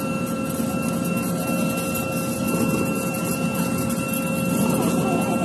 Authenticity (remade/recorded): recorded